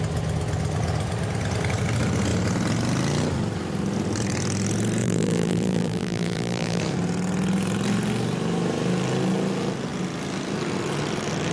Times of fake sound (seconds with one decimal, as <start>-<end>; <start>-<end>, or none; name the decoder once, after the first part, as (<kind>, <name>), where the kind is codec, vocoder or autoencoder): 5.0-6.8 (vocoder, BigVGAN v2)